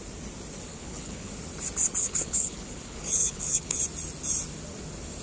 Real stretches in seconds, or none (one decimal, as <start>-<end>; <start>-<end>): 0.0-0.7; 1.3-2.0; 3.8-5.2